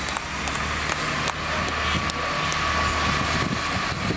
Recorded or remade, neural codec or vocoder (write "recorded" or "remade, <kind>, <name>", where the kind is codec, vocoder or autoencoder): recorded